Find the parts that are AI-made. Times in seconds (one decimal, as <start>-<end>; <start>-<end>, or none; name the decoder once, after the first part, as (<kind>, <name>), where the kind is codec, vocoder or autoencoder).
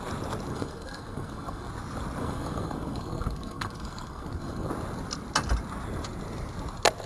0.5-1.7 (codec, SNAC); 2.2-4.7